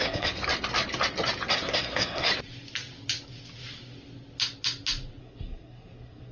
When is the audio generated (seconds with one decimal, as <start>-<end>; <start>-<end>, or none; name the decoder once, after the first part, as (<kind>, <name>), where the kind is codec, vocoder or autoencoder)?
0.0-0.4 (codec, SNAC); 1.5-2.3; 5.2-6.3